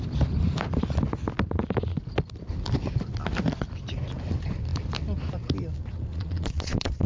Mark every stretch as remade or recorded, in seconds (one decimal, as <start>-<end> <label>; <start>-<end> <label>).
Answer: 0.0-6.1 recorded; 6.1-7.1 remade